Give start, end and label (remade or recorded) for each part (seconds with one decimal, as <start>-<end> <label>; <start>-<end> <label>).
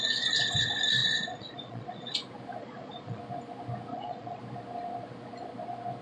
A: 0.0-1.0 recorded; 1.0-2.2 remade; 2.2-2.6 recorded; 2.6-3.2 remade; 3.2-3.9 recorded; 3.9-4.4 remade; 4.4-6.0 recorded